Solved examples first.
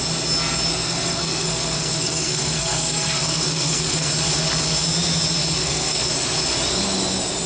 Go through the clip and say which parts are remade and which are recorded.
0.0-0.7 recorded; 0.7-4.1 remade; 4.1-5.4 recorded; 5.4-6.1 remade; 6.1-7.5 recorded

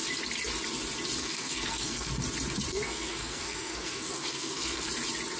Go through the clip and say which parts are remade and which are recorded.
0.0-1.2 recorded; 1.2-2.1 remade; 2.1-2.7 recorded; 2.7-4.9 remade; 4.9-5.4 recorded

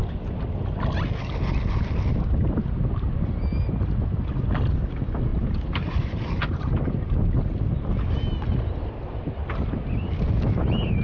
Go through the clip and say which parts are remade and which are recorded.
0.0-5.3 recorded; 5.3-7.2 remade; 7.2-11.0 recorded

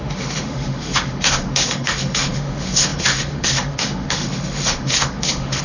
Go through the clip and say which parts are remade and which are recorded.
0.0-5.6 remade

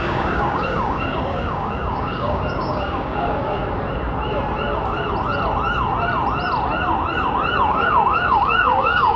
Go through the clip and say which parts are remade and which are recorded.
0.0-3.6 remade; 3.6-7.7 recorded; 7.7-9.2 remade